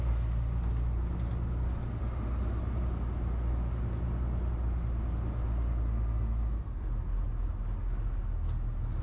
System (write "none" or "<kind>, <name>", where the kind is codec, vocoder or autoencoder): none